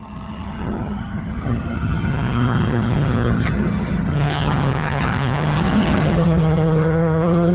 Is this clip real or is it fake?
fake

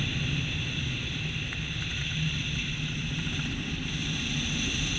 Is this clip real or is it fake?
real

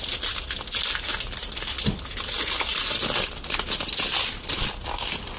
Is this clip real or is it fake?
real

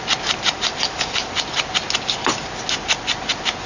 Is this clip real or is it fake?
real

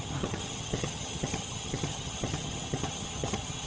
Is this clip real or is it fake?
fake